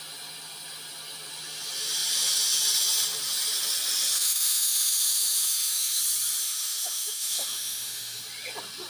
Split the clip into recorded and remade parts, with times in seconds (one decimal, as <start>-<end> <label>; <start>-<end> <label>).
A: 0.0-4.1 recorded; 4.1-6.0 remade; 6.0-6.4 recorded; 6.4-8.2 remade; 8.2-8.9 recorded